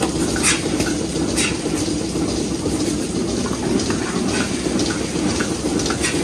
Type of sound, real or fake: real